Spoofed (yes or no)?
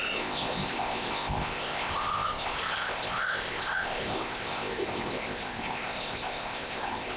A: yes